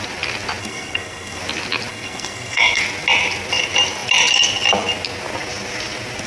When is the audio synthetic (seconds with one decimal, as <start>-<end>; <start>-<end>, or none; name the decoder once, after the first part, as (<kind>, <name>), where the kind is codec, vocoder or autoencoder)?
0.6-1.4 (codec, SNAC); 1.9-2.8